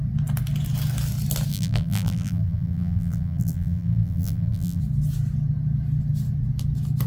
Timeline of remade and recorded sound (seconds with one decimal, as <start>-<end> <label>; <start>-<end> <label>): 0.0-1.5 recorded; 1.5-4.8 remade; 4.8-7.1 recorded